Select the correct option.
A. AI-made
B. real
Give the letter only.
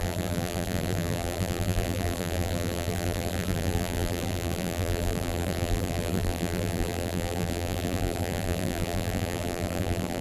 A